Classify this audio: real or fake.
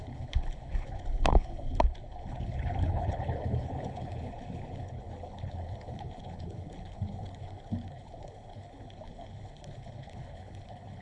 fake